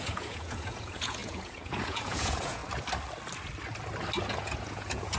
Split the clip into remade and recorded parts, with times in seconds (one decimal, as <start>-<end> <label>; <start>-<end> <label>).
0.0-2.6 remade; 2.6-4.3 recorded; 4.3-5.2 remade